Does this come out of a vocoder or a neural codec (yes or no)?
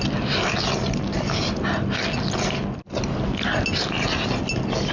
no